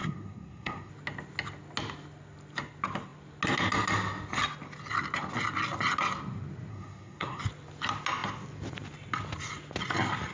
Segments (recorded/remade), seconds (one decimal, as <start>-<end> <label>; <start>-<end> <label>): 0.0-0.9 remade; 0.9-6.7 recorded; 6.7-7.4 remade; 7.4-10.3 recorded